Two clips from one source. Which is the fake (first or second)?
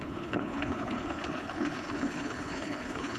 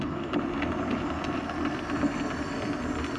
first